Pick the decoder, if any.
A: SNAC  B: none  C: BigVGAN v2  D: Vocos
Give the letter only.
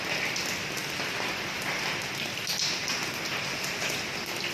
B